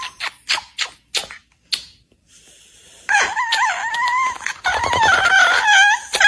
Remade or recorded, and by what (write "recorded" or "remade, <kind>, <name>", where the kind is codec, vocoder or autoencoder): recorded